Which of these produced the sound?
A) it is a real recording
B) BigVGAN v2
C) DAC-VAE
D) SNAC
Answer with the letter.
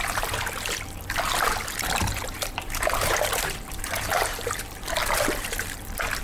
B